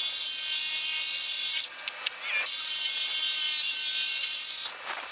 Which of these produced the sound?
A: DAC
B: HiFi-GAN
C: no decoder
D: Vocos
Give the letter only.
C